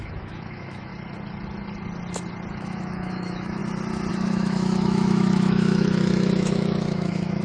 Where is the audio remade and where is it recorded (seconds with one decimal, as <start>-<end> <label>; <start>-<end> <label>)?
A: 0.0-0.9 remade; 0.9-2.5 recorded; 2.5-3.6 remade; 3.6-4.1 recorded; 4.1-7.4 remade